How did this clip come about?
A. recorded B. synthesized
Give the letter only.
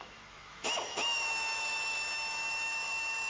B